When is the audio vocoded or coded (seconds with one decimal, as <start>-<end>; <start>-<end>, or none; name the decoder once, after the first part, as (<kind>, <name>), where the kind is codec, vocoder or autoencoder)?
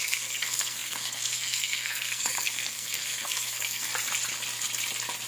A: 0.0-3.9 (codec, SNAC)